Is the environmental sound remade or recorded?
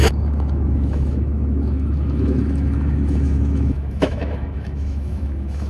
remade